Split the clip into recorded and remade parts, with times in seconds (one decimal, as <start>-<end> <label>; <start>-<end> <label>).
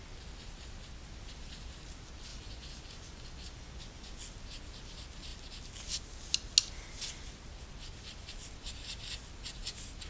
0.0-2.3 recorded; 2.3-4.2 remade; 4.2-10.1 recorded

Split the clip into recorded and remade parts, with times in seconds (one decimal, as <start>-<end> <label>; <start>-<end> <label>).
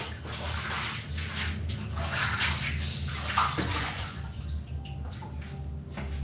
0.0-3.7 recorded; 3.7-4.4 remade; 4.4-6.2 recorded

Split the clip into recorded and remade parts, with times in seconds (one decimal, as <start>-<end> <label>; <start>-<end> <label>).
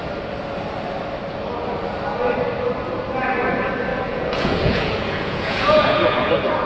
0.0-3.9 recorded; 3.9-6.3 remade; 6.3-6.7 recorded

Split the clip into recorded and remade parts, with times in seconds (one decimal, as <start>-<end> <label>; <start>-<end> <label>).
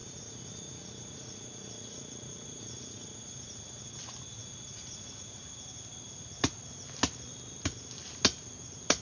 0.0-3.8 remade; 3.8-4.4 recorded; 4.4-5.5 remade; 5.5-9.0 recorded